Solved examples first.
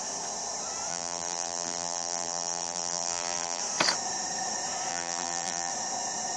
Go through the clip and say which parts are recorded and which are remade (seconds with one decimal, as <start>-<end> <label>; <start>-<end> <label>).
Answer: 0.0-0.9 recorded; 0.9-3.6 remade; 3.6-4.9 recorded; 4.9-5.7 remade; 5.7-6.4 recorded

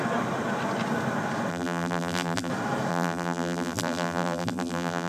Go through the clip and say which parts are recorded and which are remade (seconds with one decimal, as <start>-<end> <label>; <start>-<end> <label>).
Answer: 0.0-1.5 recorded; 1.5-2.5 remade; 2.5-2.9 recorded; 2.9-5.1 remade

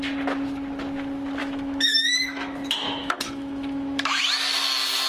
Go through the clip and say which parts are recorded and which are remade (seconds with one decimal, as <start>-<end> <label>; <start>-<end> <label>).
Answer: 0.0-1.4 recorded; 1.4-4.2 remade; 4.2-5.1 recorded

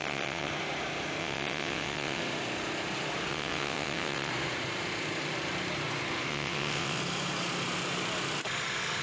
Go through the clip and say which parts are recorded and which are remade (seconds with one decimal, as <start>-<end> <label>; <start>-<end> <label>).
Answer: 0.0-0.5 remade; 0.5-1.2 recorded; 1.2-2.2 remade; 2.2-3.3 recorded; 3.3-4.3 remade; 4.3-6.3 recorded; 6.3-7.0 remade; 7.0-9.0 recorded

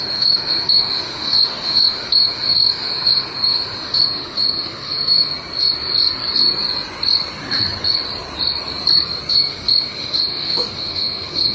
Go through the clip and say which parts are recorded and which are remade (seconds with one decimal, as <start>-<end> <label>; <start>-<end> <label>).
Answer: 0.0-5.3 remade; 5.3-9.3 recorded; 9.3-11.5 remade

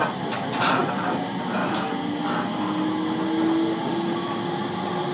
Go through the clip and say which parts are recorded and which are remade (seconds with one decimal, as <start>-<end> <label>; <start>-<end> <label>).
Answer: 0.0-5.1 recorded

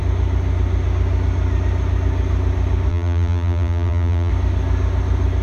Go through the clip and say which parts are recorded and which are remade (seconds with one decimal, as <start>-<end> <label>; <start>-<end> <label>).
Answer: 0.0-2.9 recorded; 2.9-4.3 remade; 4.3-5.4 recorded

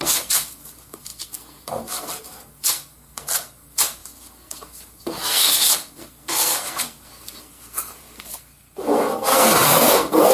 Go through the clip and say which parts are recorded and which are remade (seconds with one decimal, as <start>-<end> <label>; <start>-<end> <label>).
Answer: 0.0-10.3 remade